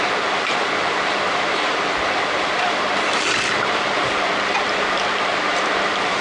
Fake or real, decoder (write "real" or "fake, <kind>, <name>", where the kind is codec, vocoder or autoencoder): fake, vocoder, BigVGAN v2